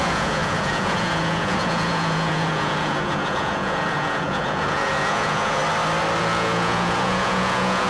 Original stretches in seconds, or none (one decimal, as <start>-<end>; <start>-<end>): 5.6-6.2